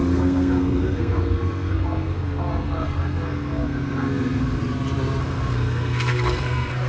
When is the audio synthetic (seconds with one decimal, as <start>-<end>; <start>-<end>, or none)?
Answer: 0.0-4.6; 5.2-6.9